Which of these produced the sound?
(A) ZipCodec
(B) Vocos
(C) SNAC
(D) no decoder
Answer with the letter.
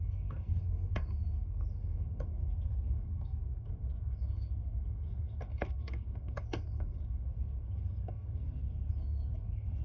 C